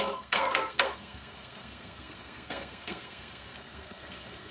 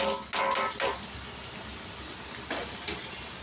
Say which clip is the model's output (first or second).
first